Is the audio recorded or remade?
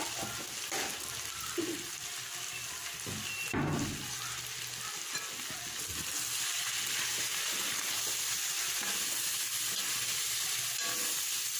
recorded